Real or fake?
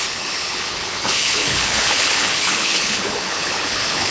fake